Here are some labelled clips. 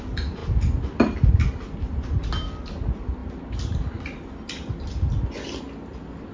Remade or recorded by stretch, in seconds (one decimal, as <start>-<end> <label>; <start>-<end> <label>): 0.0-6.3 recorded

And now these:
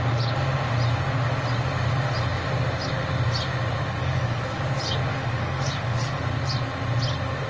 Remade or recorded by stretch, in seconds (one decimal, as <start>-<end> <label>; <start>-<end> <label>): 0.0-4.0 recorded; 4.0-4.6 remade; 4.6-5.1 recorded; 5.1-6.2 remade; 6.2-7.5 recorded

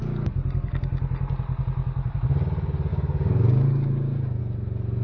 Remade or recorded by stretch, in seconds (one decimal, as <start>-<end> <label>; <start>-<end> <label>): 0.0-2.9 recorded; 2.9-4.4 remade; 4.4-5.0 recorded

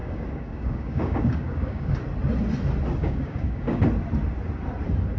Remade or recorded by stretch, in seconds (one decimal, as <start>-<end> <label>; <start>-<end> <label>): 0.0-1.9 remade; 1.9-3.0 recorded; 3.0-3.8 remade; 3.8-5.2 recorded

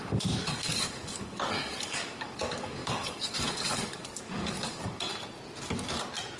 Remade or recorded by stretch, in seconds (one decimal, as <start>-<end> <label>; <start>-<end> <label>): 0.0-5.1 remade; 5.1-6.4 recorded

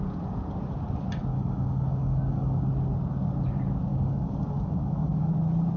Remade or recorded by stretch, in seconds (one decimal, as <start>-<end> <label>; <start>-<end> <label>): 0.0-1.3 recorded; 1.3-2.7 remade; 2.7-3.9 recorded; 3.9-5.3 remade; 5.3-5.8 recorded